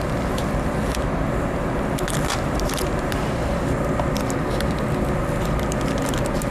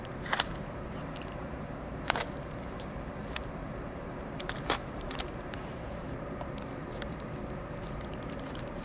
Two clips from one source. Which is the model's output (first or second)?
second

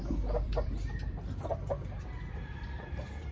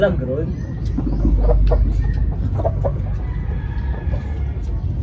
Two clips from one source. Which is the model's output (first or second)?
first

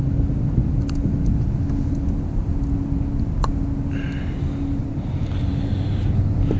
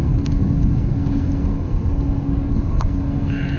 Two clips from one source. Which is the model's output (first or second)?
second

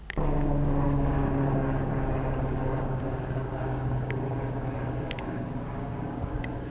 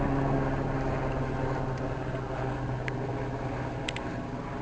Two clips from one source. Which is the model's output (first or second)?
first